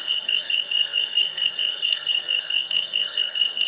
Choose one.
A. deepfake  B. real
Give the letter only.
A